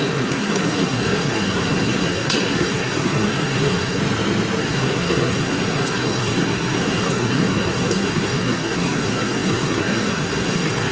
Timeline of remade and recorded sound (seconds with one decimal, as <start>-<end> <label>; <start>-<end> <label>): 0.0-4.0 remade; 4.0-4.6 recorded; 4.6-10.9 remade